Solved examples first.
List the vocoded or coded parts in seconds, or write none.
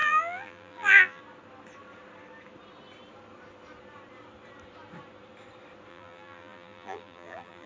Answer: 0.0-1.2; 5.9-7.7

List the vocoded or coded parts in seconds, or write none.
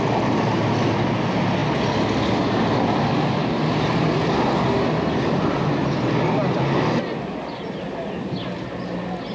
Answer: none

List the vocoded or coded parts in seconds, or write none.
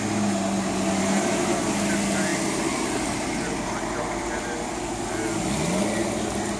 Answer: none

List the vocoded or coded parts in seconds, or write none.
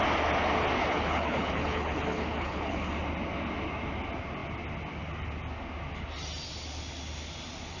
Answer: 0.8-2.9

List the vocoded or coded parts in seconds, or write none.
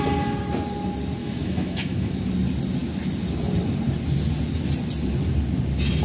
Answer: 1.2-2.2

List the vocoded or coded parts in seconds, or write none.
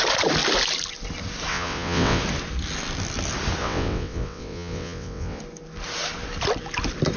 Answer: 1.5-2.2; 3.6-5.4